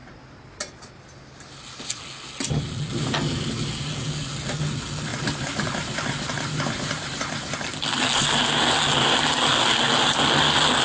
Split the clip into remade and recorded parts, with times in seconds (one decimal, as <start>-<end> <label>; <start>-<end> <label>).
0.0-5.1 recorded; 5.1-7.2 remade; 7.2-10.8 recorded